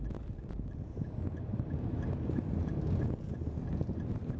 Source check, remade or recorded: recorded